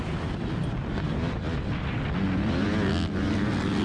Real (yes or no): yes